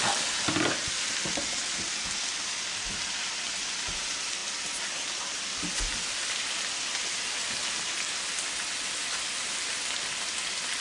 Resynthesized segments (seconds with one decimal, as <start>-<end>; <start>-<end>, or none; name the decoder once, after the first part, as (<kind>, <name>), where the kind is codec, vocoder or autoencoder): none